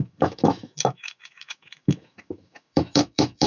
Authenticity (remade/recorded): remade